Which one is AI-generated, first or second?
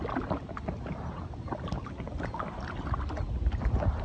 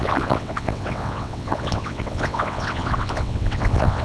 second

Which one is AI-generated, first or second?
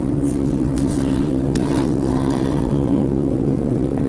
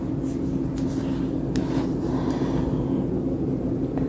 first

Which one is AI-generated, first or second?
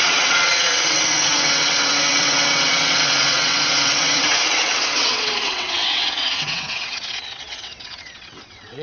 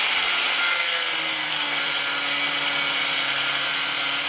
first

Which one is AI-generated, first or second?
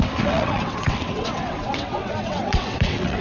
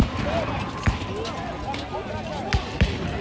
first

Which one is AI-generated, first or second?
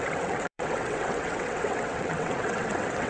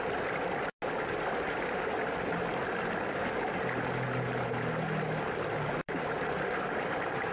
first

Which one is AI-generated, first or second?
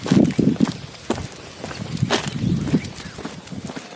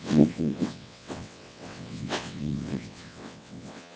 second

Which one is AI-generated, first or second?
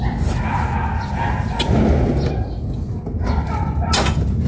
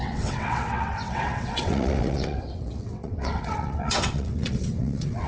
second